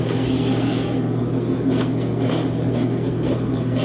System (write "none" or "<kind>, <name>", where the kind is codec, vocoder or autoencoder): codec, SNAC